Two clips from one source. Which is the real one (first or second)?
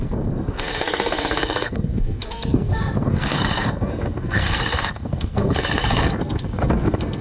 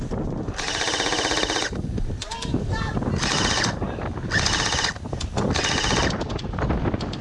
second